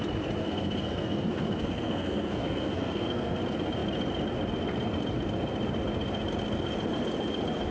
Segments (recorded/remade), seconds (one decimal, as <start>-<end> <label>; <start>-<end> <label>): 0.0-0.4 recorded; 0.4-3.4 remade; 3.4-7.7 recorded